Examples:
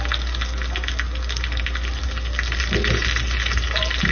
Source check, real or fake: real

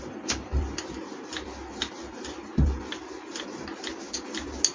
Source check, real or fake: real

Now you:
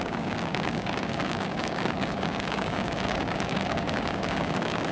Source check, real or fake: fake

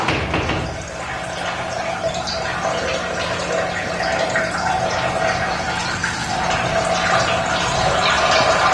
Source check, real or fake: real